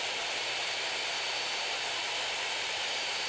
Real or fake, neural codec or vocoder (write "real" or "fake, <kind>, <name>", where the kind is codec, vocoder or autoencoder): real